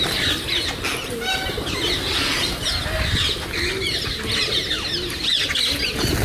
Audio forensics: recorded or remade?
recorded